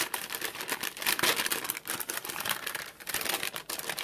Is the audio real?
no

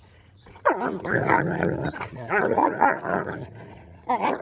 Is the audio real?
no